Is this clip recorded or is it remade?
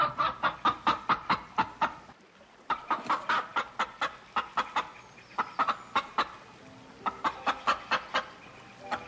recorded